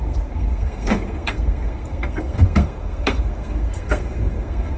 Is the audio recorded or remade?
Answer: remade